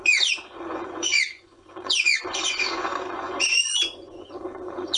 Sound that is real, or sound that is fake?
fake